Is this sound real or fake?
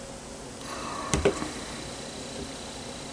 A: real